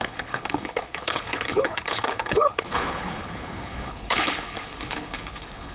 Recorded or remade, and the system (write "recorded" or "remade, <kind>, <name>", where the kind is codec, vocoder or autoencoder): remade, codec, HILCodec